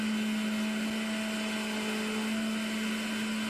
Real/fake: real